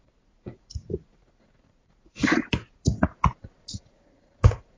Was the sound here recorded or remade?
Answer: remade